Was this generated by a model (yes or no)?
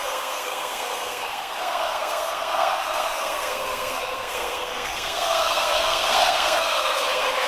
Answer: yes